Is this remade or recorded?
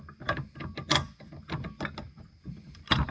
recorded